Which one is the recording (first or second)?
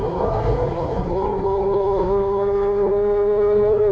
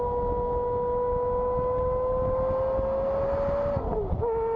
second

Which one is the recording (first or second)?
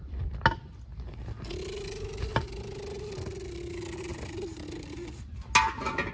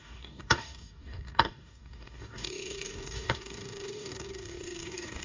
first